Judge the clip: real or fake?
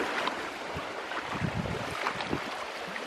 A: fake